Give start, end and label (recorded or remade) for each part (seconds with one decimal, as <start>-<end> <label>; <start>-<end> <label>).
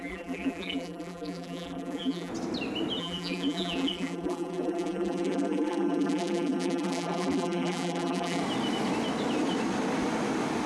0.0-2.3 remade; 2.3-3.0 recorded; 3.0-8.4 remade; 8.4-10.7 recorded